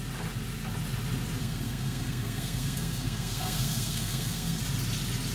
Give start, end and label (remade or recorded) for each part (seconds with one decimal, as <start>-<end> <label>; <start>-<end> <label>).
0.0-1.4 recorded; 1.4-4.6 remade; 4.6-5.3 recorded